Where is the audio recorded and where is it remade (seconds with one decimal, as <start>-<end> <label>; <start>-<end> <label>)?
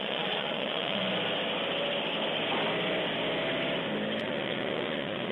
0.0-1.0 remade; 1.0-4.2 recorded; 4.2-5.3 remade